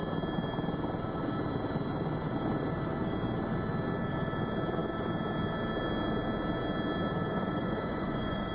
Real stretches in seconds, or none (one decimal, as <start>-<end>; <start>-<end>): 0.0-7.3